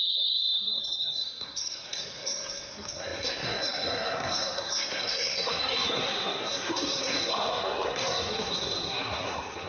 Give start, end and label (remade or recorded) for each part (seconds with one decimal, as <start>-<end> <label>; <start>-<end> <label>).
0.0-9.7 remade